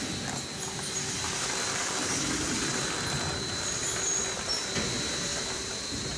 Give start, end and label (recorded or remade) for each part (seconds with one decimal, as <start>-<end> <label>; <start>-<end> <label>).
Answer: 0.0-0.5 recorded; 0.5-4.2 remade; 4.2-5.3 recorded; 5.3-6.2 remade